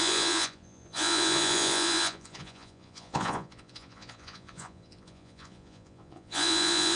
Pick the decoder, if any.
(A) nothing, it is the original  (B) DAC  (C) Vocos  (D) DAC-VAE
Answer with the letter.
C